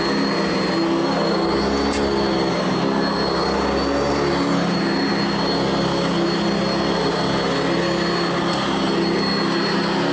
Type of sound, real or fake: real